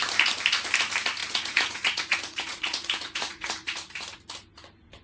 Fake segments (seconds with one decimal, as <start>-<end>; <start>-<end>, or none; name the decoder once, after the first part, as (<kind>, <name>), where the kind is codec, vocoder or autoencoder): 1.2-4.2 (vocoder, Vocos)